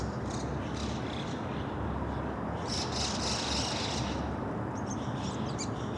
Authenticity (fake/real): real